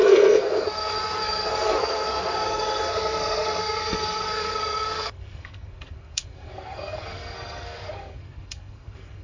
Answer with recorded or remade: remade